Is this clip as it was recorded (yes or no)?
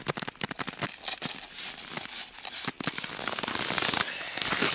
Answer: yes